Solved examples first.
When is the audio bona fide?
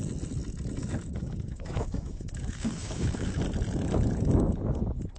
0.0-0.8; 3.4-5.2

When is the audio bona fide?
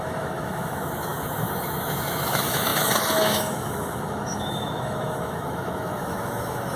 none